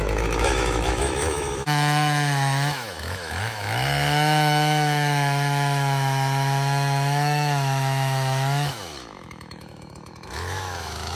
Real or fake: fake